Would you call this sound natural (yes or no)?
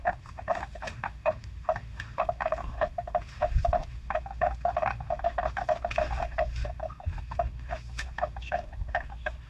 no